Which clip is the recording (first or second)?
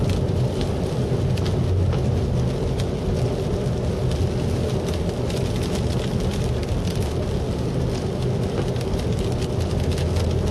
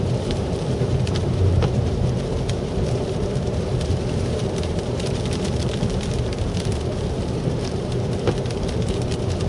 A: first